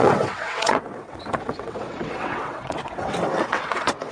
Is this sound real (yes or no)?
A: no